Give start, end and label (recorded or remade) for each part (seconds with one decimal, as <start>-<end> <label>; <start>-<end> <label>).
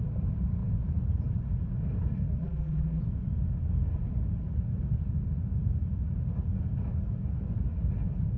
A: 0.0-2.4 recorded; 2.4-3.0 remade; 3.0-8.4 recorded